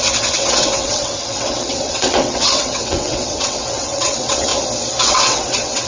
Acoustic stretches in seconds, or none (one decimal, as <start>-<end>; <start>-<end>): 4.5-5.1